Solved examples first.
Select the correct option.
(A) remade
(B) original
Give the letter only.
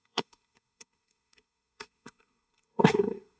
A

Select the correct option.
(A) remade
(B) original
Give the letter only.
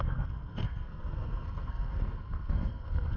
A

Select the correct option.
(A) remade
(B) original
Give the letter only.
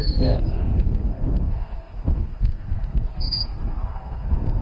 A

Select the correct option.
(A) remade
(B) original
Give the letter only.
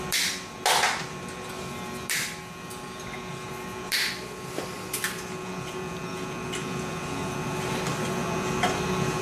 B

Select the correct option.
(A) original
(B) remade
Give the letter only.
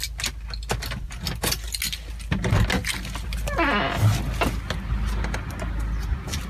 A